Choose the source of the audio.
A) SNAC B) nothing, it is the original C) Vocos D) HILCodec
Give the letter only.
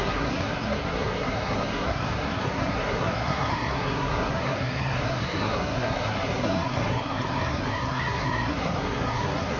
A